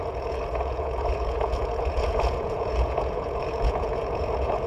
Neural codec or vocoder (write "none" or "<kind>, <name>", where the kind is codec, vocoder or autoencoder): vocoder, Vocos